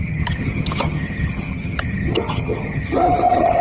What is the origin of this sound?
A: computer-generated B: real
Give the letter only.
A